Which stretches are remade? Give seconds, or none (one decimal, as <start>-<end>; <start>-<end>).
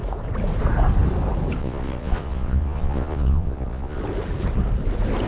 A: 1.6-4.0